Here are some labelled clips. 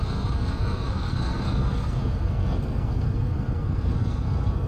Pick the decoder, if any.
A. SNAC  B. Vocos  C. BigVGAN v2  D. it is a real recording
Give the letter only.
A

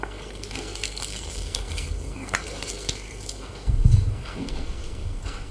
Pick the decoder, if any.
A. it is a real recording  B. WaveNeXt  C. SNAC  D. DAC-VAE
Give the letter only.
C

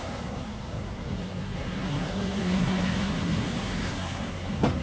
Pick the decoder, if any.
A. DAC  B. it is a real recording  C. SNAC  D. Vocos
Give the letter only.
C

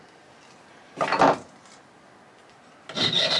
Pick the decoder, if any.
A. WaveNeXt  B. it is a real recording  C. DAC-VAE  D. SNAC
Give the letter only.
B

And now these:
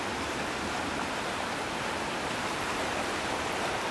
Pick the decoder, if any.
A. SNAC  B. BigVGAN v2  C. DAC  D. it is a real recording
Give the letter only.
D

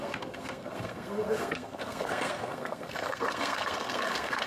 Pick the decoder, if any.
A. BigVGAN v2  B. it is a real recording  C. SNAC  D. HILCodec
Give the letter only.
C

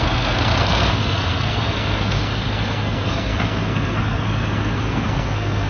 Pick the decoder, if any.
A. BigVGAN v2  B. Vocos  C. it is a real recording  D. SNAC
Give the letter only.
D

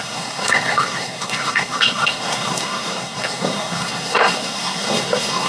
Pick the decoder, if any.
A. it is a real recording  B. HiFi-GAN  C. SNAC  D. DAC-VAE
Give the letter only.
C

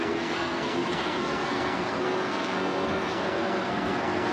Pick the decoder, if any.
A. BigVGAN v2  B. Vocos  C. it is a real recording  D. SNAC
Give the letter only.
D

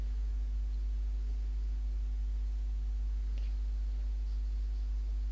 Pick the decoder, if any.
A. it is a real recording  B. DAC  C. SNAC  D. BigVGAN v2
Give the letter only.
A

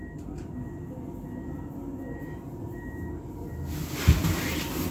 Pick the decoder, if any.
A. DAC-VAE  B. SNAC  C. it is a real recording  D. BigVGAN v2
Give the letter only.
C